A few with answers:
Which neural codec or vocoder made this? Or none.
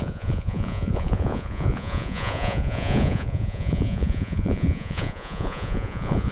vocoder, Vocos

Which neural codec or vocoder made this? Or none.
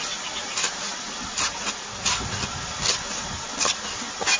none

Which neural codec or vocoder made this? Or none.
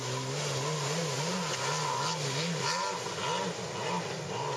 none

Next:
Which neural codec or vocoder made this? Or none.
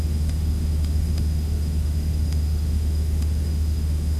autoencoder, DAC-VAE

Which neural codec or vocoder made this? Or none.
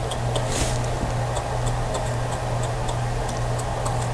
none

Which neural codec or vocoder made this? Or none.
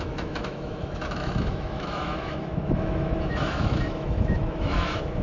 autoencoder, DAC-VAE